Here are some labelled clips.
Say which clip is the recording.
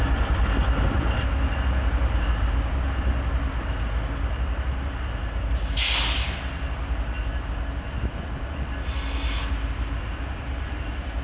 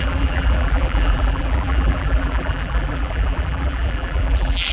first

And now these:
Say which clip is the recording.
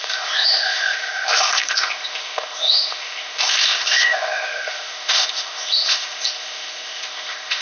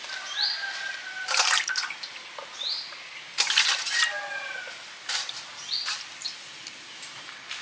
second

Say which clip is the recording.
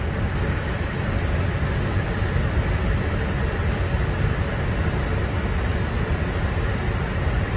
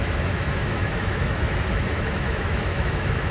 first